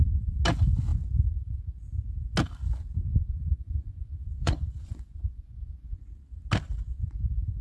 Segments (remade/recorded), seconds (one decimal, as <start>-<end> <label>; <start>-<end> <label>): 0.0-3.2 recorded; 3.2-6.0 remade; 6.0-7.6 recorded